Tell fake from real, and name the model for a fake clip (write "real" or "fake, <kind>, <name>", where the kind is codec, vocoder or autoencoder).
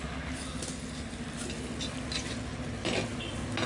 real